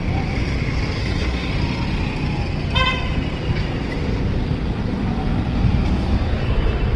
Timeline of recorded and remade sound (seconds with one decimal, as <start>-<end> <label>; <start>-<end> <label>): 0.0-1.0 recorded; 1.0-1.5 remade; 1.5-7.0 recorded